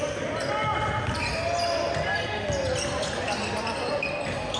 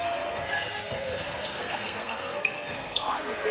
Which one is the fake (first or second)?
second